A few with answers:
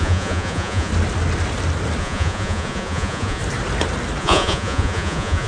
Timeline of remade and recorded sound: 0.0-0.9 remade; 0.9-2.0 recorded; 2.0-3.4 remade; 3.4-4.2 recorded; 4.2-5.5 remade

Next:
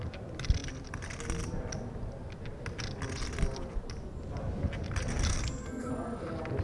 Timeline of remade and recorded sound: 0.0-5.3 recorded; 5.3-5.9 remade; 5.9-6.6 recorded

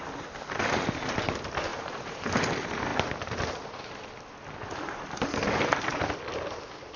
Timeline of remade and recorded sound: 0.0-1.7 recorded; 1.7-2.3 remade; 2.3-7.0 recorded

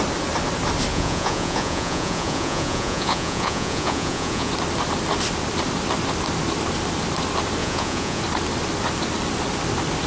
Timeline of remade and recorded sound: 0.0-0.9 recorded; 0.9-4.5 remade; 4.5-7.6 recorded; 7.6-8.2 remade; 8.2-10.1 recorded